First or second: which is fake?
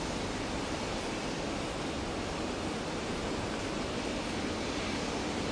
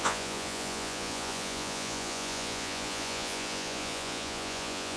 second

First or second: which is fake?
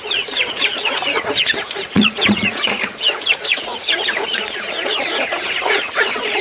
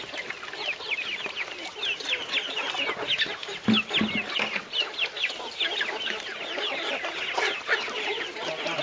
first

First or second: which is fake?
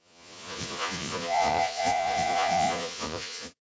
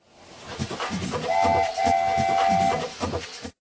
first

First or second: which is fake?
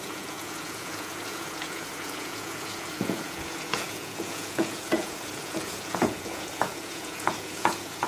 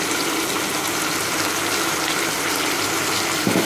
first